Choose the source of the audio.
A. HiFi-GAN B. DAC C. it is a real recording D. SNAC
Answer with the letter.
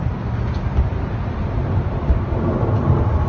C